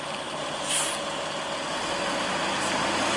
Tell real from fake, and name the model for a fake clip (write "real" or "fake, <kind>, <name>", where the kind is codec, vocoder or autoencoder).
real